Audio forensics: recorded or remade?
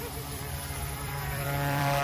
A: remade